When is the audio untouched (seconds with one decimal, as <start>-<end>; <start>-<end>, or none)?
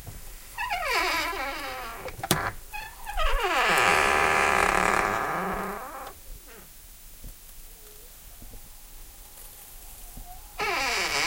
0.0-1.9; 3.3-3.9; 5.3-11.3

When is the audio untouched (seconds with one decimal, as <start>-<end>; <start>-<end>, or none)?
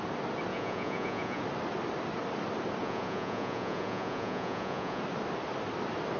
0.0-0.5; 1.4-2.8; 5.0-6.2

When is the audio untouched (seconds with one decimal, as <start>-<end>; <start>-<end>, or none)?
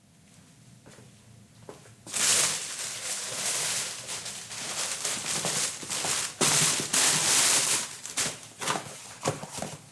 0.0-9.9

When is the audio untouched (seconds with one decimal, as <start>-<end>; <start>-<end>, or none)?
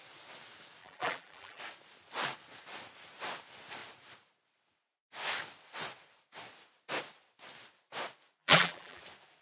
0.0-0.8; 1.6-8.4; 9.0-9.4